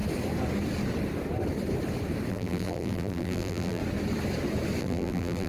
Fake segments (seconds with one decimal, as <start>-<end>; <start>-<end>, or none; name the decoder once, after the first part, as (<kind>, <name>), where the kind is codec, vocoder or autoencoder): 2.3-3.8 (vocoder, BigVGAN v2); 4.8-5.5